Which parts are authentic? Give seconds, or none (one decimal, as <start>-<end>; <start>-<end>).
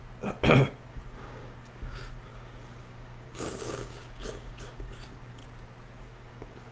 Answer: 0.0-0.9; 5.4-6.0